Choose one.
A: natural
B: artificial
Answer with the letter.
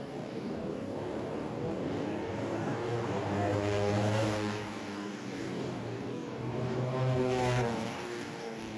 B